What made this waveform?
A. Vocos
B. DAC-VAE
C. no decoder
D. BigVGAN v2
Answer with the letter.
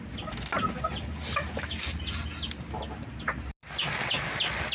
C